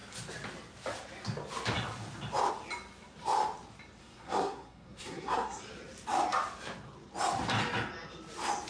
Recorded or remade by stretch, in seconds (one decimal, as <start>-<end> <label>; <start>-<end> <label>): 0.0-4.0 recorded; 4.0-5.6 remade; 5.6-8.7 recorded